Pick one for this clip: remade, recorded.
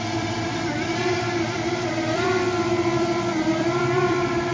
remade